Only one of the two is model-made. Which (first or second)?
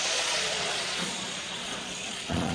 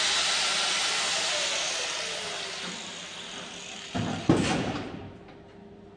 first